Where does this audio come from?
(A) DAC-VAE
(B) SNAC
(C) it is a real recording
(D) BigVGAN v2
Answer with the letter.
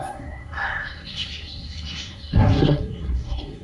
B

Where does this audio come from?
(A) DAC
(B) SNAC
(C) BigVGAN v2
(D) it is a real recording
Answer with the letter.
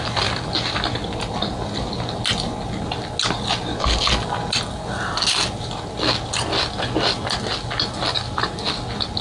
D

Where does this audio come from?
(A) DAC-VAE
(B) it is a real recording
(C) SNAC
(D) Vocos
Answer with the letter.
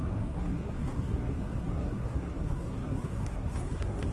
C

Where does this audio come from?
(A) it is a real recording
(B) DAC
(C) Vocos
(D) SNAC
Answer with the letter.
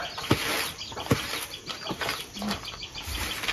A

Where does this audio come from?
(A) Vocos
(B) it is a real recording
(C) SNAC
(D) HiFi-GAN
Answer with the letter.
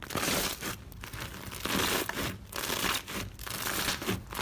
B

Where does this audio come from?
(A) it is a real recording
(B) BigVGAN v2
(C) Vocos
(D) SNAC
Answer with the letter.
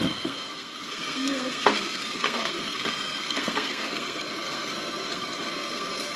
D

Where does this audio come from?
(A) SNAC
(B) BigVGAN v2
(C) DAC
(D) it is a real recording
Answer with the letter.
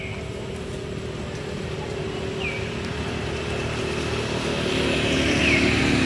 D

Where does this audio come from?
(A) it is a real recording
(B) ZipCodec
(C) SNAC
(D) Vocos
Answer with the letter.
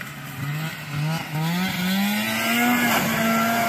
A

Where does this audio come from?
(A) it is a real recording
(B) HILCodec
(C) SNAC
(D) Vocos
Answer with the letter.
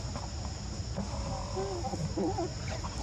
A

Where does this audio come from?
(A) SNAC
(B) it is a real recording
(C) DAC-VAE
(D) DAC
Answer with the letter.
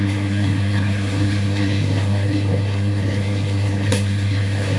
A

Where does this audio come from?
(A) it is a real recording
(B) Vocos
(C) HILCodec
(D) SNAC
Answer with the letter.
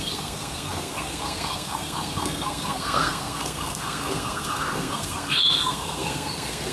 D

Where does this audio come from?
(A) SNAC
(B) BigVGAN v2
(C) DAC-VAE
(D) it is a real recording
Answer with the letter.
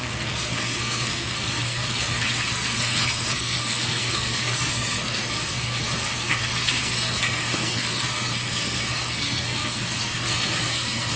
A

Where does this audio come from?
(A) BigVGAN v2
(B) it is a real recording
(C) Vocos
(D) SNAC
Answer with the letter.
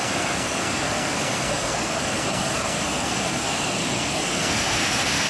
D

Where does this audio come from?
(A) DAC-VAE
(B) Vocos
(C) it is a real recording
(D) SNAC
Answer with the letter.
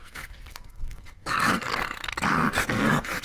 D